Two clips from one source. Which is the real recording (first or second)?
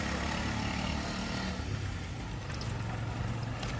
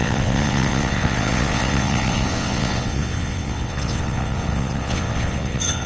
first